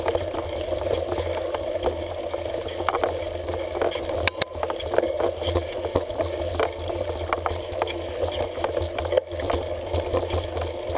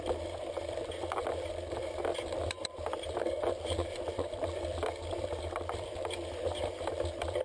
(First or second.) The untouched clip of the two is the first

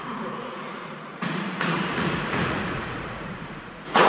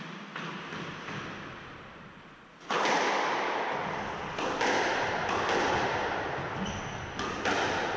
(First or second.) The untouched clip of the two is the second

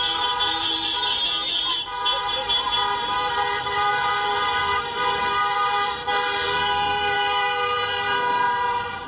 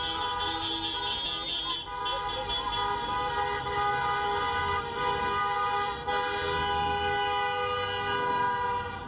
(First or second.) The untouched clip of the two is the second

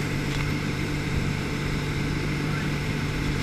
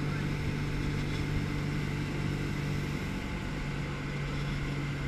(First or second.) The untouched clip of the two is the second